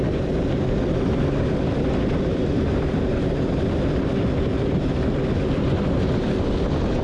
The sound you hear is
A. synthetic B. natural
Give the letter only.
A